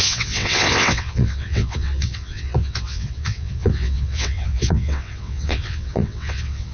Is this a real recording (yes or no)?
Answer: no